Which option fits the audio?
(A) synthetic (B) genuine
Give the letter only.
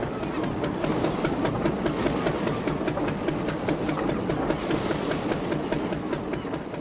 B